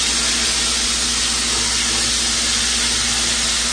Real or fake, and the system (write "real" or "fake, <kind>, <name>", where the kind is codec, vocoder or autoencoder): real